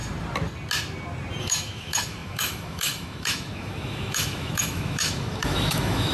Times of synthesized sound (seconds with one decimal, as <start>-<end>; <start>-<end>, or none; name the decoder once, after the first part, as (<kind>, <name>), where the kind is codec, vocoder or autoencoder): 1.4-6.1 (autoencoder, DAC-VAE)